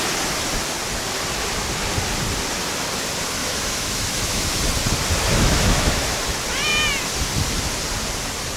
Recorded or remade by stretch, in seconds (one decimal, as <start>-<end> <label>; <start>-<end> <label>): 0.0-3.4 recorded; 3.4-4.6 remade; 4.6-5.3 recorded; 5.3-6.2 remade; 6.2-8.6 recorded